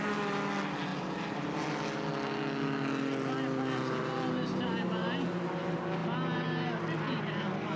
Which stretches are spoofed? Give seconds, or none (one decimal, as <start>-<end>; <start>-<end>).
none